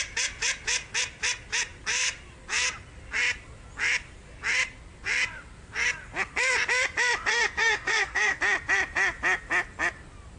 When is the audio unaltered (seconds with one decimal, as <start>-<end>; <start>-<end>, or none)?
0.0-7.3; 8.4-10.4